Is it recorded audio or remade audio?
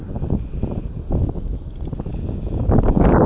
recorded